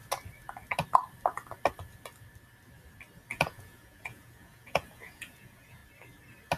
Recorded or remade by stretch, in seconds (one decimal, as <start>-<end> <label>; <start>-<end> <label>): 0.0-3.4 recorded; 3.4-5.8 remade; 5.8-6.6 recorded